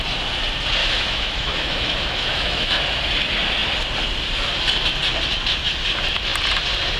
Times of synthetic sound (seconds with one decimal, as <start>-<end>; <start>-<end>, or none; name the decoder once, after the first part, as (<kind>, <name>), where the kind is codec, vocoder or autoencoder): 0.8-2.8 (autoencoder, DAC-VAE)